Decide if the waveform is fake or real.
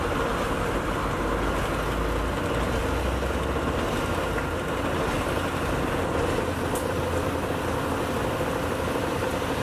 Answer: real